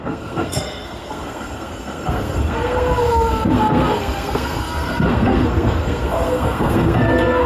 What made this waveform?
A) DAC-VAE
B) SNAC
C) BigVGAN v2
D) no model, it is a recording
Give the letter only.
B